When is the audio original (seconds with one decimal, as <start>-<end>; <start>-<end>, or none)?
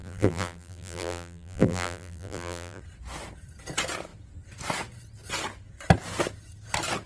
2.8-7.1